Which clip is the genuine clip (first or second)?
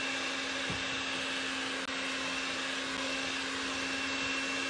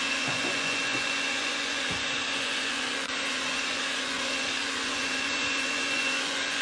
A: first